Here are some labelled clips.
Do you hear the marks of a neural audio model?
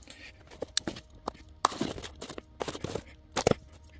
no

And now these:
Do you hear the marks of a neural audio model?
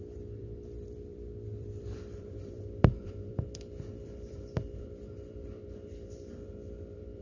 yes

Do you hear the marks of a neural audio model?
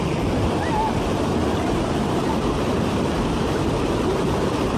yes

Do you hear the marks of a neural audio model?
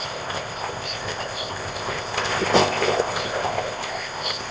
yes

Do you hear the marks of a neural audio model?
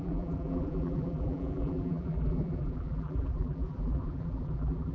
yes